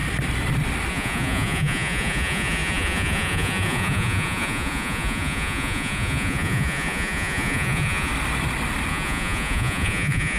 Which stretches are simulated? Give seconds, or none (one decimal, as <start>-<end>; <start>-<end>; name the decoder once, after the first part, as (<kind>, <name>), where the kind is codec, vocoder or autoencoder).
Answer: 0.9-8.1 (vocoder, Vocos); 8.9-10.4